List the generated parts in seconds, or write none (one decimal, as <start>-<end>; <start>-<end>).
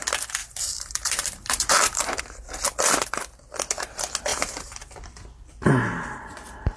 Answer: 0.4-2.2; 4.3-4.9